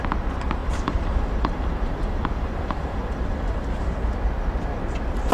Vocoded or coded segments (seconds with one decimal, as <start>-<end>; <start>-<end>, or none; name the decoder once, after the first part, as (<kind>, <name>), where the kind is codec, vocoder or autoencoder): 0.6-3.8 (vocoder, BigVGAN v2)